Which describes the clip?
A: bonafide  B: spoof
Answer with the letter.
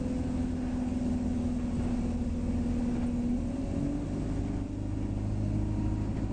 A